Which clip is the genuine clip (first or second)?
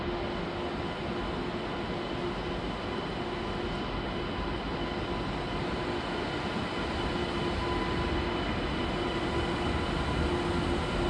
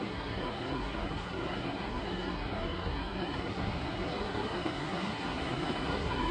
first